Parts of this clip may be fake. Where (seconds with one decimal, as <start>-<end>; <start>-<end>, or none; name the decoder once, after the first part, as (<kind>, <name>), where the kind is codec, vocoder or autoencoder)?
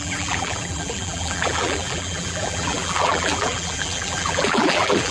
0.0-5.1 (vocoder, BigVGAN v2)